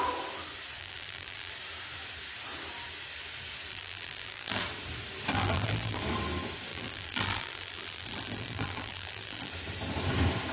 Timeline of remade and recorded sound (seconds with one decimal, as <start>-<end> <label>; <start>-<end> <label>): 0.0-0.8 recorded; 0.8-1.5 remade; 1.5-3.7 recorded; 3.7-4.6 remade; 4.6-5.3 recorded; 5.3-6.0 remade; 6.0-6.7 recorded; 6.7-9.5 remade; 9.5-10.5 recorded